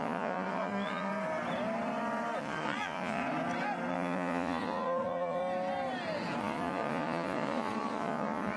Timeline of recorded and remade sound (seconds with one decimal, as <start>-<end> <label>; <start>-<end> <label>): 0.0-1.1 remade; 1.1-2.4 recorded; 2.4-3.2 remade; 3.2-3.9 recorded; 3.9-5.4 remade; 5.4-6.4 recorded; 6.4-8.6 remade